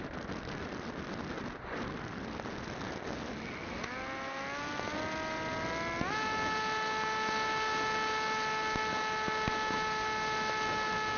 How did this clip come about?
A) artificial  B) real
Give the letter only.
B